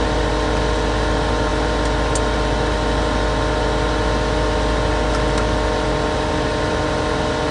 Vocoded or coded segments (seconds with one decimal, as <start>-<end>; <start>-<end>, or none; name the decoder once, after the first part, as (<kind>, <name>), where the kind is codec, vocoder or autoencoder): none